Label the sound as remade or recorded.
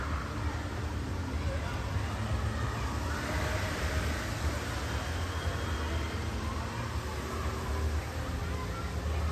recorded